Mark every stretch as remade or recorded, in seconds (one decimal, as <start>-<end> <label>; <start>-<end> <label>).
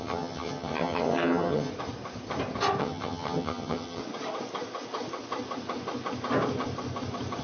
0.0-1.7 remade; 1.7-2.8 recorded; 2.8-4.0 remade; 4.0-7.4 recorded